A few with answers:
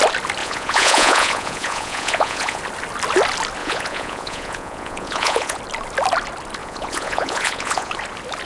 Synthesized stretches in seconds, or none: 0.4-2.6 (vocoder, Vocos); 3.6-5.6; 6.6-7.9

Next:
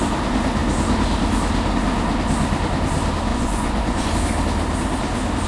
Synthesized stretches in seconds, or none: 3.3-4.1 (vocoder, Vocos)

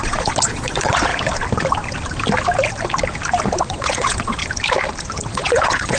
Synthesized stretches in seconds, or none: 0.0-1.1 (vocoder, Vocos); 3.6-4.4; 5.3-6.0

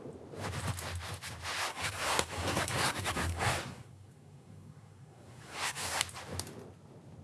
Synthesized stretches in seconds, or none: 1.7-6.0 (codec, SNAC)

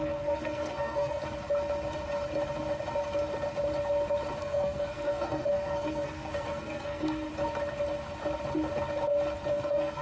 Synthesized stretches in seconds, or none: 0.0-1.2 (codec, SNAC); 4.4-7.3; 9.5-10.0